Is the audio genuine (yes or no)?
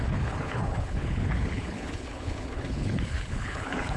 no